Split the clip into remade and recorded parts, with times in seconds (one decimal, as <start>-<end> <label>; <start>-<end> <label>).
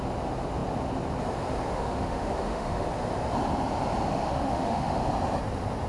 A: 0.0-1.7 recorded; 1.7-2.9 remade; 2.9-4.1 recorded; 4.1-5.0 remade; 5.0-5.9 recorded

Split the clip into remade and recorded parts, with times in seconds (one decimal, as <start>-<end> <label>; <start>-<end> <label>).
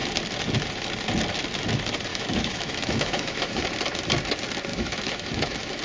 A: 0.0-2.1 recorded; 2.1-3.6 remade; 3.6-4.7 recorded; 4.7-5.8 remade